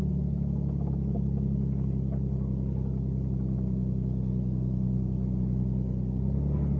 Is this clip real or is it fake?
real